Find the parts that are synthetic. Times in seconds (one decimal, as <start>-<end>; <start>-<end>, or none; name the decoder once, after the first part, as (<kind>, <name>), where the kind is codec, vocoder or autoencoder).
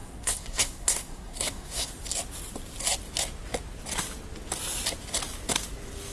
0.0-1.9 (codec, SNAC)